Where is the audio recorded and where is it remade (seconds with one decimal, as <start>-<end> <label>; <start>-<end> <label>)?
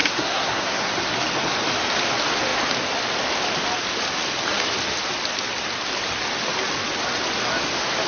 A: 0.0-0.9 remade; 0.9-8.1 recorded